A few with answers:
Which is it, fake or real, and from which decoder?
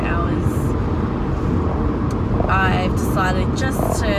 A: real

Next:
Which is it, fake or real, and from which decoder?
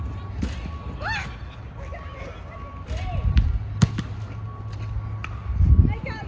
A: real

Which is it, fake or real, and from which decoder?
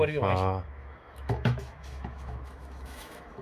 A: fake, autoencoder, DAC-VAE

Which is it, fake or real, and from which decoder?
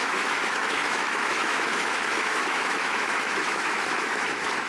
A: fake, autoencoder, DAC-VAE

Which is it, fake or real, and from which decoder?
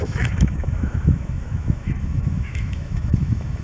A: fake, autoencoder, DAC-VAE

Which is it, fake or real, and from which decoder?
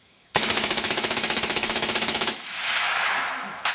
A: fake, autoencoder, DAC-VAE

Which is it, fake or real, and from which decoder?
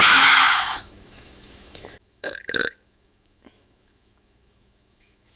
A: fake, autoencoder, DAC-VAE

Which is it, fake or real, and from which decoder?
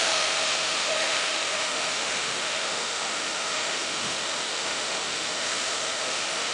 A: fake, autoencoder, DAC-VAE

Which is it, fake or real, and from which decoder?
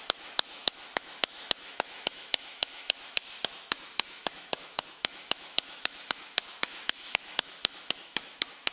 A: fake, autoencoder, DAC-VAE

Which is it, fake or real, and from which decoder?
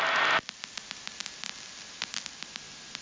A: real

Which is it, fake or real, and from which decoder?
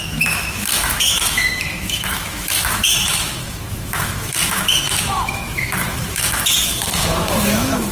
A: fake, autoencoder, DAC-VAE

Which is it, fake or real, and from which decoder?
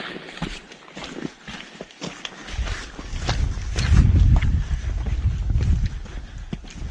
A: real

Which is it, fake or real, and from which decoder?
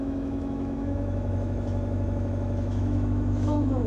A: fake, autoencoder, DAC-VAE